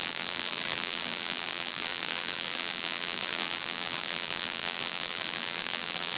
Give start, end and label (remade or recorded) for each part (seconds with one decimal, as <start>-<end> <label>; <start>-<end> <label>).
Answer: 0.0-6.2 remade

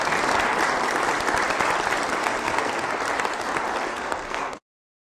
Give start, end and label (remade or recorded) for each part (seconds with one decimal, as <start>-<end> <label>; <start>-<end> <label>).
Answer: 0.0-2.2 recorded; 2.2-2.9 remade; 2.9-3.9 recorded; 3.9-4.6 remade; 4.6-5.1 recorded

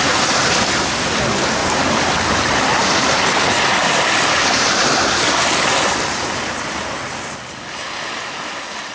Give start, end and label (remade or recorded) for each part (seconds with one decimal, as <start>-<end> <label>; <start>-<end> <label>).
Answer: 0.0-8.9 recorded

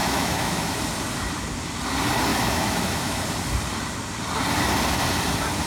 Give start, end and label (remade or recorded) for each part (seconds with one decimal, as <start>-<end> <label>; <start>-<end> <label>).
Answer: 0.0-0.8 remade; 0.8-2.3 recorded; 2.3-3.2 remade; 3.2-5.7 recorded

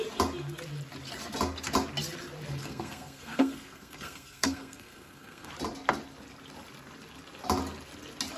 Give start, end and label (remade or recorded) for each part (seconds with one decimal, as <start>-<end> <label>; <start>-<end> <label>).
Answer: 0.0-2.6 recorded; 2.6-5.5 remade; 5.5-8.4 recorded

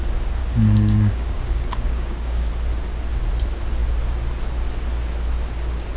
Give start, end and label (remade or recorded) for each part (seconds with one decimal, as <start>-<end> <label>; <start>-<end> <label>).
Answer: 0.0-0.4 recorded; 0.4-2.5 remade; 2.5-6.0 recorded